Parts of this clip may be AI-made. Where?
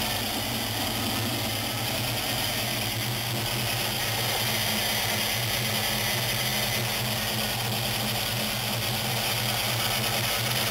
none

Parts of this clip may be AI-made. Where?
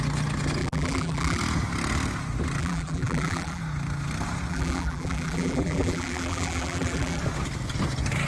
0.6-1.4 (vocoder, BigVGAN v2); 2.6-3.6; 4.5-7.2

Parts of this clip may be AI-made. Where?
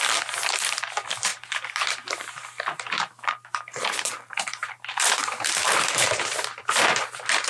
1.3-3.1 (vocoder, BigVGAN v2); 4.6-6.6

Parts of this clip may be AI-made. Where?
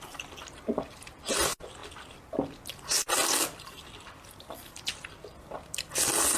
none